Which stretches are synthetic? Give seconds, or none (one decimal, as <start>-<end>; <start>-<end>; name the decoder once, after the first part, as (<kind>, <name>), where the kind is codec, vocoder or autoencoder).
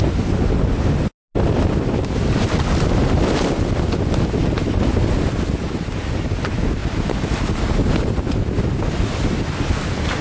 none